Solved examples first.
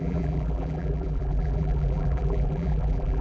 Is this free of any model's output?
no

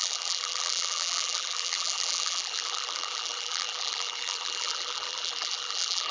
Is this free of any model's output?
no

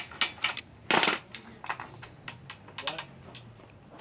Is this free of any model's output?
yes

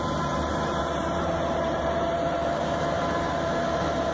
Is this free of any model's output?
no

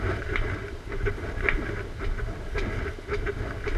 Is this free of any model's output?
yes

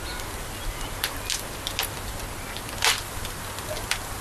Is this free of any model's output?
yes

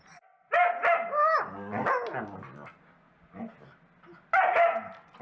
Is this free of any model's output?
yes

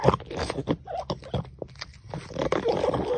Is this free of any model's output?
yes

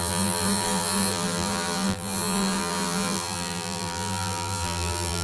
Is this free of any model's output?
no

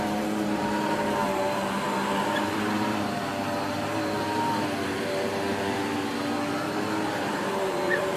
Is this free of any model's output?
no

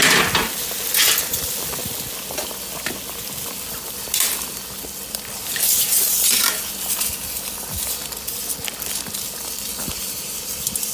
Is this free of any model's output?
yes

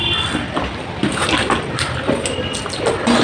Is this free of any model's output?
yes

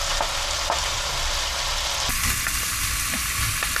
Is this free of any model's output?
yes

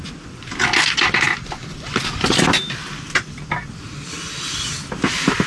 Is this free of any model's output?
no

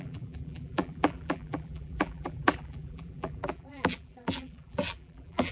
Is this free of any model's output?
no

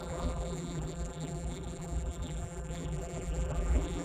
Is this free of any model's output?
no